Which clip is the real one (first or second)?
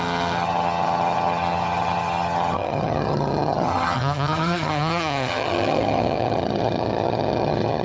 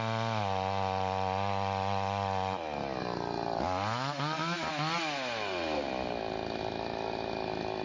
second